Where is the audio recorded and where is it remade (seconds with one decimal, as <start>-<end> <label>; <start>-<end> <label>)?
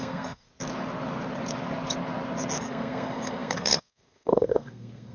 0.0-0.5 remade; 0.5-2.6 recorded; 2.6-5.1 remade